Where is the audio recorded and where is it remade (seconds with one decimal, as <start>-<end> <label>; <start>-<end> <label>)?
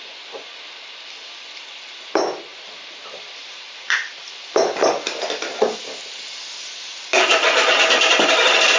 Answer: 0.0-8.8 recorded